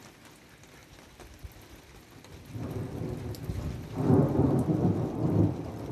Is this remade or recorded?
recorded